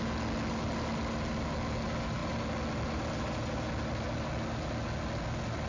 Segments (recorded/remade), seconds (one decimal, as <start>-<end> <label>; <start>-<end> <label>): 0.0-5.7 recorded